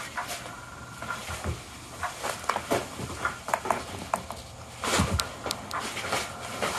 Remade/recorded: recorded